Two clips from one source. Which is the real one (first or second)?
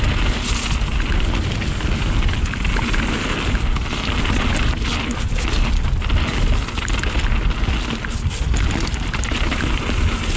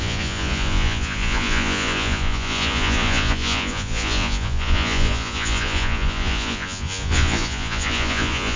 first